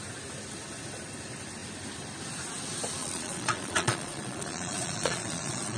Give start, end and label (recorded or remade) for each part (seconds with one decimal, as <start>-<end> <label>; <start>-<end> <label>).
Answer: 0.0-3.0 recorded; 3.0-5.8 remade